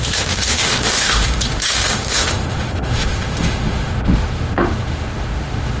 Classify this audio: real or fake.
fake